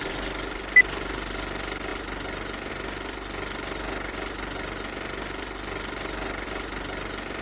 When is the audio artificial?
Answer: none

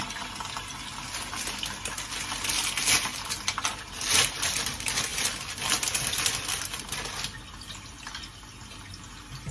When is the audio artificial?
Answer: none

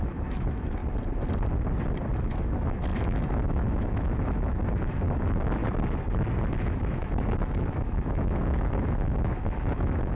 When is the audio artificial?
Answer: 0.0-0.8; 2.2-5.6; 6.5-10.2

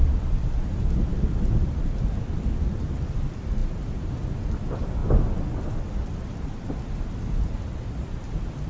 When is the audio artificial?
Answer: none

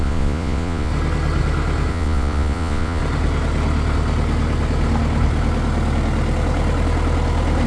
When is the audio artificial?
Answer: 0.0-0.9; 1.9-3.0

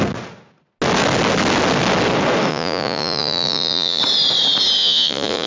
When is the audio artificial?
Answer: 2.5-4.0; 4.8-5.5

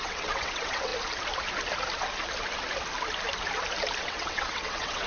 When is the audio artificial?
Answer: 0.0-0.9; 4.0-5.1